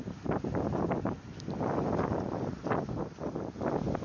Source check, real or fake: real